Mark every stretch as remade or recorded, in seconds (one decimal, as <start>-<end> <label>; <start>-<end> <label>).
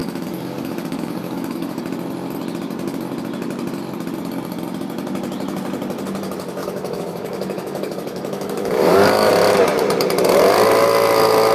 0.0-1.8 remade; 1.8-6.6 recorded; 6.6-9.3 remade; 9.3-11.5 recorded